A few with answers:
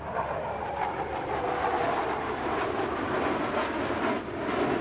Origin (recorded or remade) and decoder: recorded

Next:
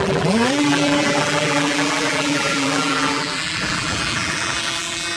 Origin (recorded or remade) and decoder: remade, vocoder, BigVGAN v2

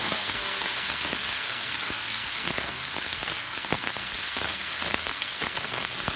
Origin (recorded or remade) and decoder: remade, codec, SNAC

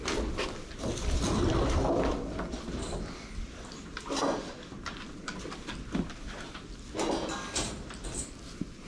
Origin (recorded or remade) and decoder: recorded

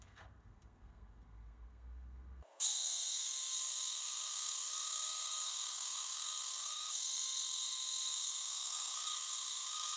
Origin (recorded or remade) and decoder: remade, codec, SNAC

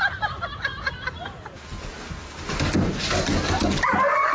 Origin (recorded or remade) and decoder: recorded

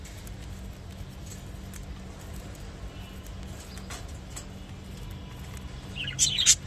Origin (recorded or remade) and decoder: recorded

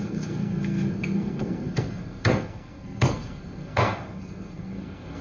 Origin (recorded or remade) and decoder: remade, codec, SNAC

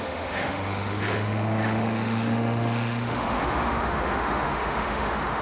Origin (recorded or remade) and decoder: remade, autoencoder, DAC-VAE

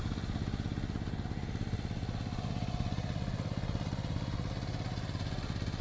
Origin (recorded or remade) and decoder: recorded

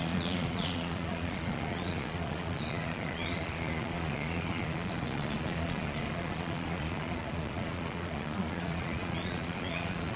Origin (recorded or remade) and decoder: remade, vocoder, Vocos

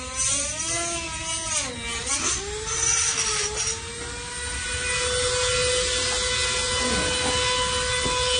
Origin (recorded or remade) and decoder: recorded